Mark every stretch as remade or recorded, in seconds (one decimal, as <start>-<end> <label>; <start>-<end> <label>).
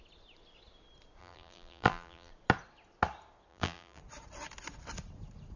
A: 0.0-1.2 recorded; 1.2-2.3 remade; 2.3-3.5 recorded; 3.5-4.0 remade; 4.0-5.6 recorded